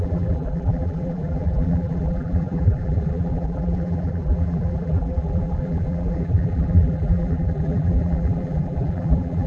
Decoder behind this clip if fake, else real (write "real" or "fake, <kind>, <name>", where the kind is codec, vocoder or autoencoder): fake, vocoder, BigVGAN v2